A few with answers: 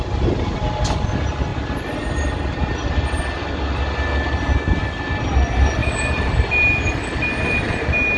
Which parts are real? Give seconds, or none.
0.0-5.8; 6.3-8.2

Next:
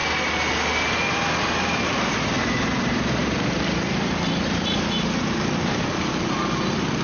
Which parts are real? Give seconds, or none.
0.0-3.2; 5.5-7.0

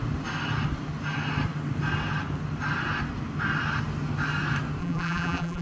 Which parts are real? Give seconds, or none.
0.0-4.8

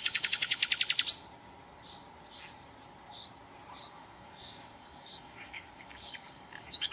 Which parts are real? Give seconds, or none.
0.6-3.9

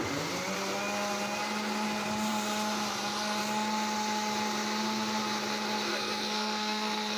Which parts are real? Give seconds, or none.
0.0-5.9

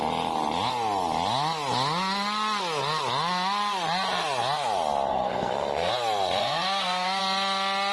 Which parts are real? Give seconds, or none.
0.0-5.1; 5.9-6.4; 7.2-7.9

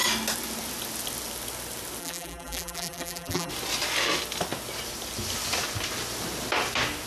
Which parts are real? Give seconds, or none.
0.0-2.0; 3.5-7.1